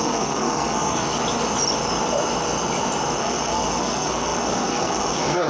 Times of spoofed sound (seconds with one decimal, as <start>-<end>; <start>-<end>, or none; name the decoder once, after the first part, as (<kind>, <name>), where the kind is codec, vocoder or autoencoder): 0.0-1.2 (codec, SNAC); 3.2-5.5